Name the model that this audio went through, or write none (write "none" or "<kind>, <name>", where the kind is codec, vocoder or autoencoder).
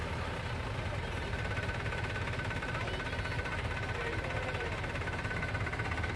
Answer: none